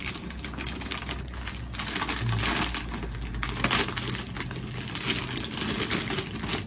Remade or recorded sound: recorded